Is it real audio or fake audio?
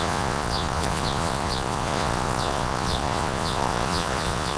fake